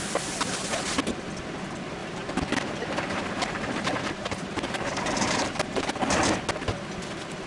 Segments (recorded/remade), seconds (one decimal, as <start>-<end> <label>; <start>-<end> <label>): 0.0-2.0 recorded; 2.0-5.9 remade; 5.9-7.5 recorded